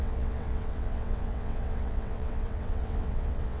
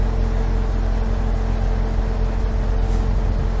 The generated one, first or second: first